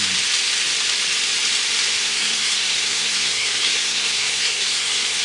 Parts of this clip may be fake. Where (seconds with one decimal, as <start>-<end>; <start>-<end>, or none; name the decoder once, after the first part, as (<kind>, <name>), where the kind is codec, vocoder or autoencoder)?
2.0-5.2 (codec, SNAC)